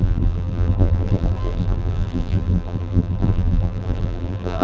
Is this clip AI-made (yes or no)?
yes